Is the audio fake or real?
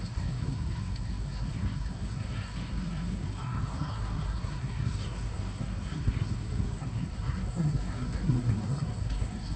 fake